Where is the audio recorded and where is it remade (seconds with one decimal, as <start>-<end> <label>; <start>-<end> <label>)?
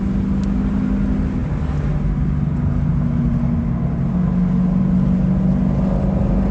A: 0.0-6.5 recorded